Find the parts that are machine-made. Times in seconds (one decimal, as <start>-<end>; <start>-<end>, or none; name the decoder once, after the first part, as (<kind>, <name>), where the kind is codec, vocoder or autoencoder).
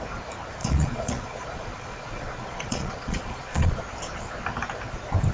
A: 0.6-3.8 (vocoder, Vocos)